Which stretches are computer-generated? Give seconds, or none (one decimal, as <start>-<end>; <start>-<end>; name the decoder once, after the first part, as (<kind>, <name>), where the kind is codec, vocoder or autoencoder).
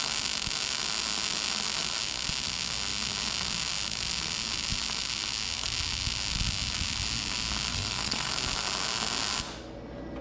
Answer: 7.7-8.3 (codec, SNAC)